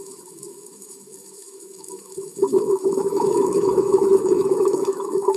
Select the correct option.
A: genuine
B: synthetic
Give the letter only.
B